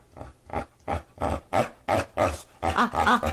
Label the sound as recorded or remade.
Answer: recorded